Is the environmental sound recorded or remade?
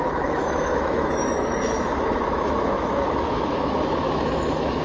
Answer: remade